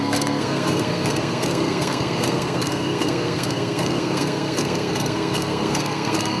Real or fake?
fake